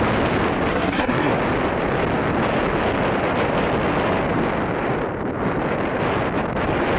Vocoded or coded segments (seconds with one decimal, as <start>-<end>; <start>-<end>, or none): 0.7-1.3

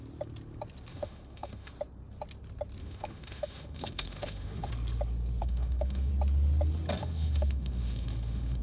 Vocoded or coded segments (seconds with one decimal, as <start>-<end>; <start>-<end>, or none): 0.9-1.7; 2.8-4.7; 5.4-6.1; 7.0-8.6

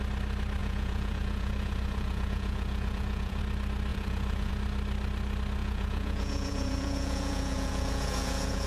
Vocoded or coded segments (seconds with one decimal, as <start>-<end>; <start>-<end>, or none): 0.6-3.4; 3.9-4.5; 5.6-8.7

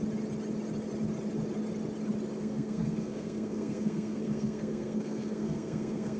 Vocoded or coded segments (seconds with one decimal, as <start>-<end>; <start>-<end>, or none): 2.4-6.2

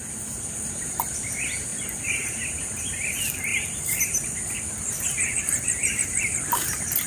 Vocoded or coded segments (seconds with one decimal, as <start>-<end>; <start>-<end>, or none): 3.5-4.1

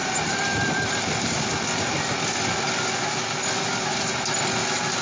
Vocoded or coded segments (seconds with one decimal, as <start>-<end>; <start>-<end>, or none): none